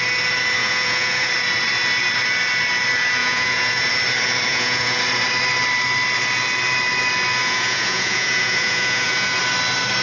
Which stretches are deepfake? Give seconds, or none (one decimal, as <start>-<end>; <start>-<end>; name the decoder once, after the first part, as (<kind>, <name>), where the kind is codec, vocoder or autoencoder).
0.6-1.3 (vocoder, Vocos); 3.2-3.9; 4.5-5.0; 7.4-9.4